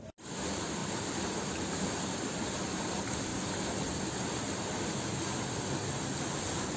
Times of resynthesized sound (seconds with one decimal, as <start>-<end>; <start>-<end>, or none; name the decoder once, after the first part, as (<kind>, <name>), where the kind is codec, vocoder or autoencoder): none